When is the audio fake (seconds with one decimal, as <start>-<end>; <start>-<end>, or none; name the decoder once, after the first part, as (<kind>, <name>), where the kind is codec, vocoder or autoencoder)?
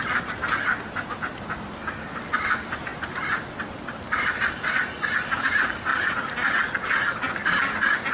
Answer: none